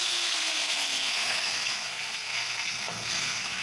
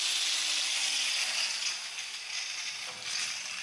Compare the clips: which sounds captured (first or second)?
second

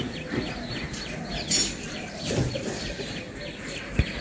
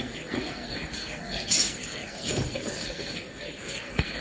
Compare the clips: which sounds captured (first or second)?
first